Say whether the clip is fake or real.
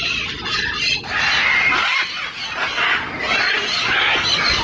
real